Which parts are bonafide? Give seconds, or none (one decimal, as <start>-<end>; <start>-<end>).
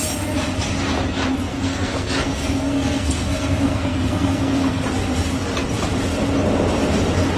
0.0-1.5; 4.8-7.4